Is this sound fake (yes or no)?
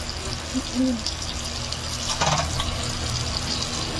no